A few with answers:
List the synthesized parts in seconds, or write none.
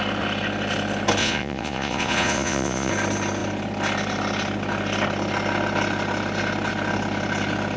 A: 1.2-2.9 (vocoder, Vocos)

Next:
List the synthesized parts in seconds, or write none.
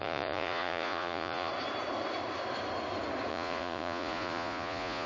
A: 0.0-1.5 (vocoder, Vocos); 3.3-5.1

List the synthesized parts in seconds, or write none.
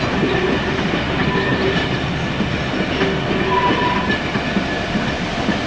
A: none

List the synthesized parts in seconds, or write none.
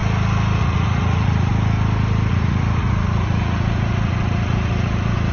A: 0.6-1.5 (vocoder, Vocos); 2.3-5.3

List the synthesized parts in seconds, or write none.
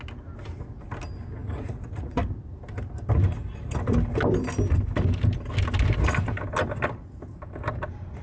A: 1.4-2.2 (vocoder, Vocos)